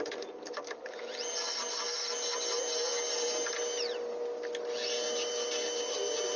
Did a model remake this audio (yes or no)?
no